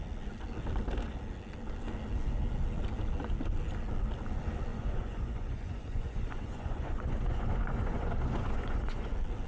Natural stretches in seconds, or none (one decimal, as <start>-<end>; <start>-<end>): 0.0-4.7; 9.1-9.5